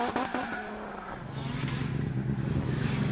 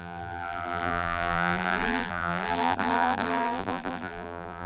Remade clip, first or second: second